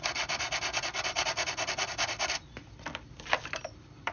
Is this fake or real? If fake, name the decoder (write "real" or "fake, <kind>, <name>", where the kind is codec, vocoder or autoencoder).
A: fake, vocoder, BigVGAN v2